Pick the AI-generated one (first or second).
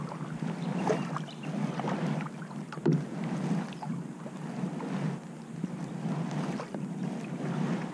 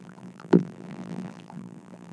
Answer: second